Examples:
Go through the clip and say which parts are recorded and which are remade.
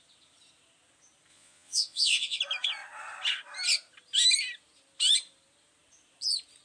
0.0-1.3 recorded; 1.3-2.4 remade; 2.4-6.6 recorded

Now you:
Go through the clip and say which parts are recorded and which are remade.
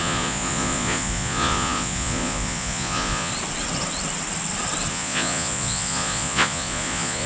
0.0-3.3 remade; 3.3-4.9 recorded; 4.9-7.3 remade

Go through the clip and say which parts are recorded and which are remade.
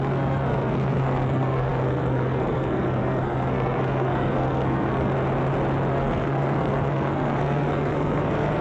0.0-5.1 remade; 5.1-5.9 recorded; 5.9-8.6 remade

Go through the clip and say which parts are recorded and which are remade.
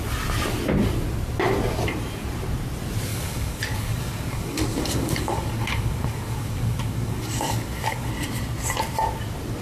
0.0-3.1 recorded; 3.1-8.1 remade; 8.1-9.6 recorded